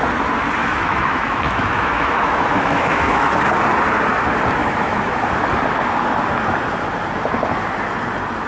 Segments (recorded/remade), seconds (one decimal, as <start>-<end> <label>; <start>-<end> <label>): 0.0-0.6 recorded; 0.6-3.3 remade; 3.3-4.6 recorded; 4.6-5.1 remade; 5.1-8.5 recorded

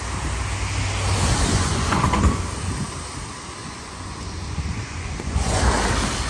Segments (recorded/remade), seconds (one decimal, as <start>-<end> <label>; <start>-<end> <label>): 0.0-1.5 recorded; 1.5-2.2 remade; 2.2-3.6 recorded; 3.6-5.6 remade; 5.6-6.3 recorded

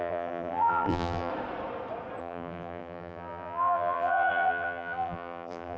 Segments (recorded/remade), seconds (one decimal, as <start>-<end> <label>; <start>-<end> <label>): 0.0-1.3 remade; 1.3-2.2 recorded; 2.2-5.8 remade